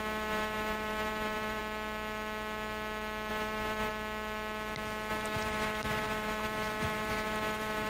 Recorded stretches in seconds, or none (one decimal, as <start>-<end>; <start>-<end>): 1.6-3.3; 3.9-5.1